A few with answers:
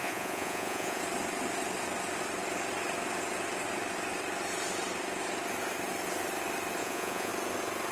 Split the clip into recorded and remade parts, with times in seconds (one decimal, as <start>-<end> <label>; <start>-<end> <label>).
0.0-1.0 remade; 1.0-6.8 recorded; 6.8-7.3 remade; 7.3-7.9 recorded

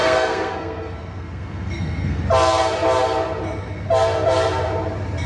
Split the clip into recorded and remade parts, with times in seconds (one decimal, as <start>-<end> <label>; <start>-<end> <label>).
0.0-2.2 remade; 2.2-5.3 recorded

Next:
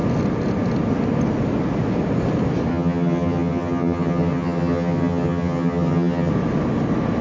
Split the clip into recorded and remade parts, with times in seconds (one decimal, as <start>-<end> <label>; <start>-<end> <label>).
0.0-2.7 recorded; 2.7-6.3 remade; 6.3-7.2 recorded

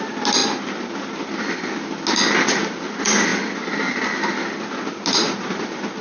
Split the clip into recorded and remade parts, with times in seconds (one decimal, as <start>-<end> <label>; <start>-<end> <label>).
0.0-6.0 recorded

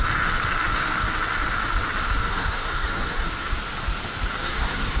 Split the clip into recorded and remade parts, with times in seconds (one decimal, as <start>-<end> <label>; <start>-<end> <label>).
0.0-2.2 recorded; 2.2-3.3 remade; 3.3-4.4 recorded; 4.4-5.0 remade

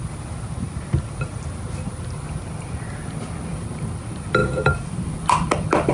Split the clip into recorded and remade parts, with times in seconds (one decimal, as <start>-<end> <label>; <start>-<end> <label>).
0.0-3.5 recorded; 3.5-5.9 remade

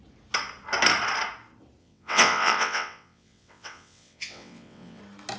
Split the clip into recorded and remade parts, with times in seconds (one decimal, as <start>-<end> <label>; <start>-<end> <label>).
0.0-1.8 recorded; 1.8-5.0 remade; 5.0-5.4 recorded